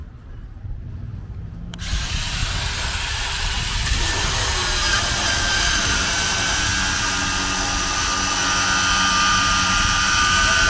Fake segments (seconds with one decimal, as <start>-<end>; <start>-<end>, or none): 0.0-2.4; 3.1-6.7; 9.3-10.7